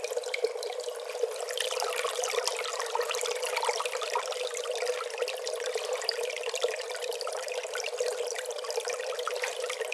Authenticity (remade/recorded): recorded